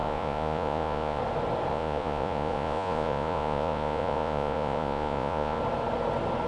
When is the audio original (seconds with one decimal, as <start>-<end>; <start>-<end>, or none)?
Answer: 1.2-1.7; 5.6-6.5